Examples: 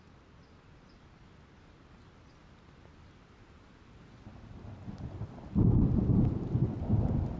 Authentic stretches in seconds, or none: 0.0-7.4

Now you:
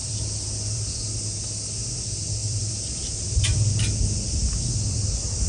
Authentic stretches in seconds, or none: 0.9-2.4; 3.7-5.5

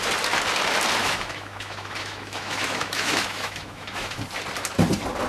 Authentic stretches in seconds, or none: 0.0-1.0; 4.2-5.3

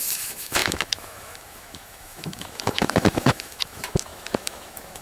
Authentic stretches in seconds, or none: none

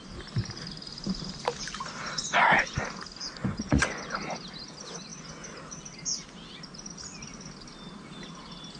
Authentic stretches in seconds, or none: 0.0-3.4; 4.1-8.8